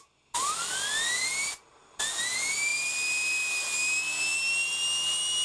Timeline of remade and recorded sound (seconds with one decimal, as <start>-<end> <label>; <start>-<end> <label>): 0.0-5.4 recorded